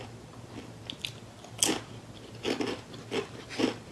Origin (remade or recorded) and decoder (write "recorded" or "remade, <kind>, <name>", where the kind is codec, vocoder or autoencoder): recorded